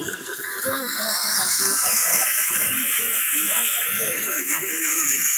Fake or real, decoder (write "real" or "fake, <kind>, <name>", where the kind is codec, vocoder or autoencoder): fake, codec, SNAC